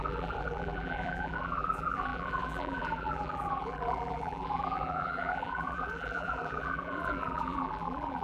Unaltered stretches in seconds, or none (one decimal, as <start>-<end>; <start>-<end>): none